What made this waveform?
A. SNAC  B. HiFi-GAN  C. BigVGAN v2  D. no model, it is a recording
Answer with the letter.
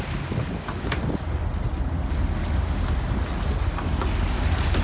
D